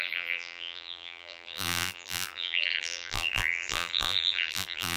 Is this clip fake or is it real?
fake